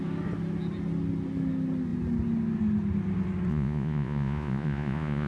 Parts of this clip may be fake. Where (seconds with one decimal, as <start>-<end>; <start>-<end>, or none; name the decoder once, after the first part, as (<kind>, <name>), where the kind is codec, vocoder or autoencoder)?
3.5-5.3 (vocoder, Vocos)